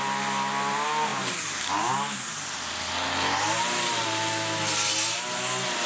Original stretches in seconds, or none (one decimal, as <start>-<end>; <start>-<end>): 0.0-5.9

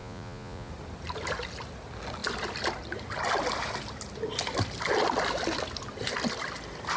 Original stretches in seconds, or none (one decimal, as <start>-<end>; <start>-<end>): 0.7-7.0

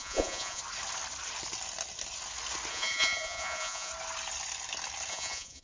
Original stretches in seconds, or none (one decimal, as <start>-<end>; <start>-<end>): 0.6-2.7; 3.9-5.1

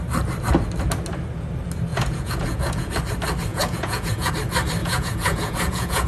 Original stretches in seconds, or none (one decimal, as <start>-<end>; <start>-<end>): 0.0-1.9; 2.9-3.5; 4.3-4.8

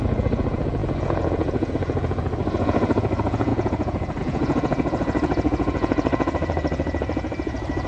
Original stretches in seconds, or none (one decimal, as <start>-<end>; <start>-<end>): none